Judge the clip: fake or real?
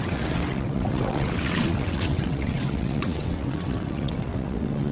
fake